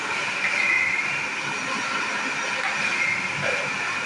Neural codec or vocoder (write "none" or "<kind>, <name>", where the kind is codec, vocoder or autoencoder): none